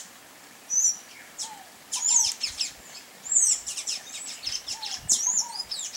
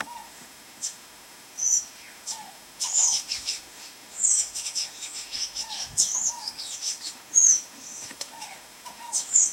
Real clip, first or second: first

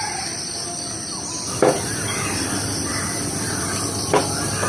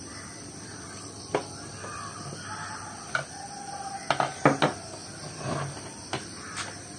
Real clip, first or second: second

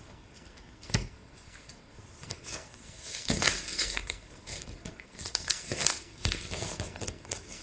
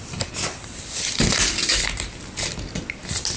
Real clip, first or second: second